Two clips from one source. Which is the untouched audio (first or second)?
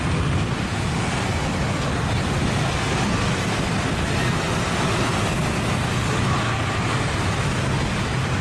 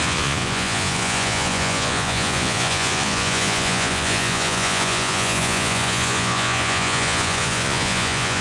first